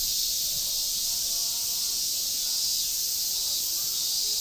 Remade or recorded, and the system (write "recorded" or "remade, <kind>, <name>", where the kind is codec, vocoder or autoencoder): recorded